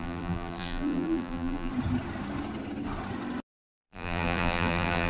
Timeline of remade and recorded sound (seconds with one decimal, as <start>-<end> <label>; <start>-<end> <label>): 0.0-1.7 remade; 1.7-3.6 recorded; 3.6-5.1 remade